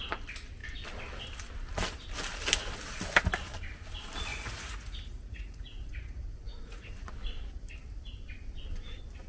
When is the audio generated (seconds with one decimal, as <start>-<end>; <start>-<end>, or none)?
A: 4.3-7.1